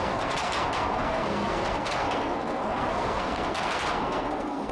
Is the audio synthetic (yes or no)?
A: yes